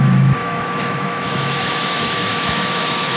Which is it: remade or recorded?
remade